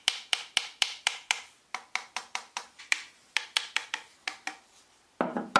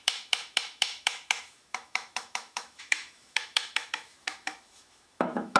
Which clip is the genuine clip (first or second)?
first